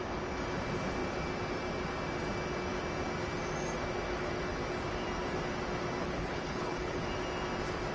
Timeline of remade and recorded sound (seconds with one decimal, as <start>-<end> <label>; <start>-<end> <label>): 0.0-6.0 recorded; 6.0-7.0 remade; 7.0-7.9 recorded